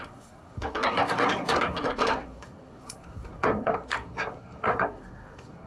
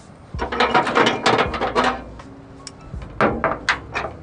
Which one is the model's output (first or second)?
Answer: first